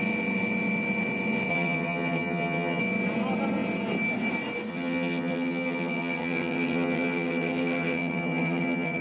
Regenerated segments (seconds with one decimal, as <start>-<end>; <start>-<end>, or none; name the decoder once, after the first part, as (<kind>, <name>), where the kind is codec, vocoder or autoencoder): 1.5-2.8 (vocoder, HiFi-GAN); 4.7-9.0